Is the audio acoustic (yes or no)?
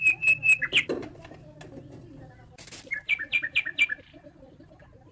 yes